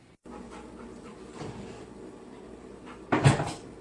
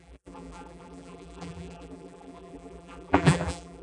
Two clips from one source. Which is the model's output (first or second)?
second